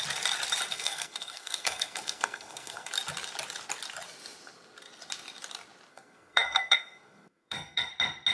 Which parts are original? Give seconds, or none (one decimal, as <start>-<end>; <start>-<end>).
0.0-0.7; 2.9-5.9; 7.9-8.3